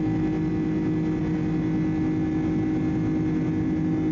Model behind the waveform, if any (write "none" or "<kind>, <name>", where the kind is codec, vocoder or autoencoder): none